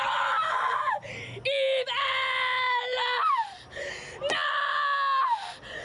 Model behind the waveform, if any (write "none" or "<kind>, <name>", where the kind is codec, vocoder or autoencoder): none